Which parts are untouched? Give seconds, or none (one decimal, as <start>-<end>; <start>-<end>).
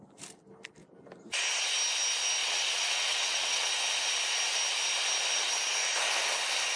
0.0-2.4; 3.7-6.8